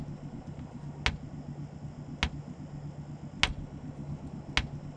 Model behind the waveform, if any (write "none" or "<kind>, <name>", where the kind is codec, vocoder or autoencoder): none